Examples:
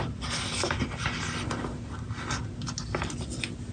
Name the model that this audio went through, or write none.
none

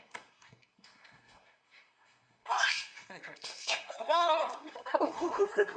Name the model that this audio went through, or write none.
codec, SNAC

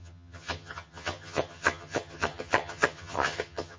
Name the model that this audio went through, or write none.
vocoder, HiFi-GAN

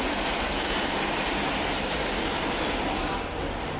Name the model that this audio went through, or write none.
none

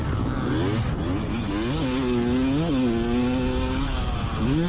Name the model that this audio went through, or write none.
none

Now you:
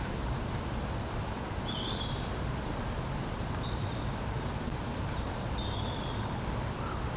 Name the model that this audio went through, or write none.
none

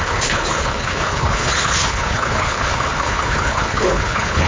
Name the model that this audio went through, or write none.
codec, HILCodec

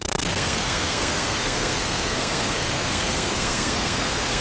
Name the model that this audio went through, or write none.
codec, SNAC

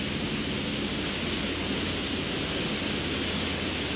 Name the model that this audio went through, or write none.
none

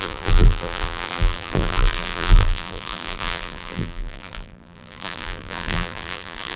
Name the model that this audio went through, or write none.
vocoder, BigVGAN v2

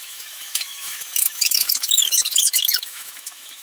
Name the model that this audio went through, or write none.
autoencoder, DAC-VAE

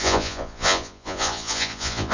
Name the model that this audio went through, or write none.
vocoder, Vocos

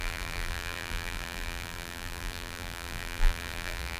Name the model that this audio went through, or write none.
vocoder, BigVGAN v2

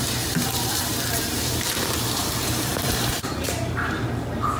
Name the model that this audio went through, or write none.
vocoder, BigVGAN v2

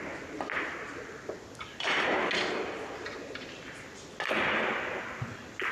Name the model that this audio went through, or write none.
none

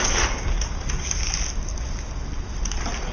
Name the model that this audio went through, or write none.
none